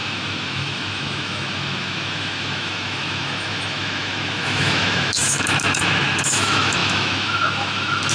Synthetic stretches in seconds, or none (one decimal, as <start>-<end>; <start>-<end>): 0.0-8.1